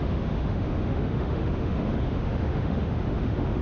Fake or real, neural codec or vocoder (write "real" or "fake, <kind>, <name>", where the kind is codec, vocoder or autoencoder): fake, autoencoder, DAC-VAE